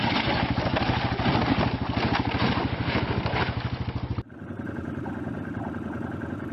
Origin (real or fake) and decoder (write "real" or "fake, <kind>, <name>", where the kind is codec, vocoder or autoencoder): real